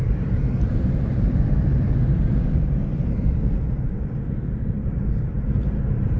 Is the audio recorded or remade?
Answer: remade